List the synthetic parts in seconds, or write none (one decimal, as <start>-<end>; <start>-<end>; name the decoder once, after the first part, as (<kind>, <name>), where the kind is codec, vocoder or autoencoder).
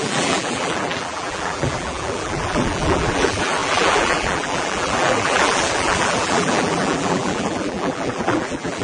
0.0-8.8 (vocoder, BigVGAN v2)